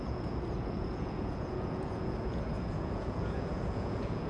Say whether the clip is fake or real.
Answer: fake